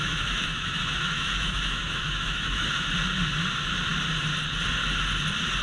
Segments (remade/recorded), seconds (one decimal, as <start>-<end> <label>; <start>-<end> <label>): 0.0-2.9 remade; 2.9-5.6 recorded